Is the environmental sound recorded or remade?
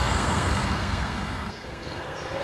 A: remade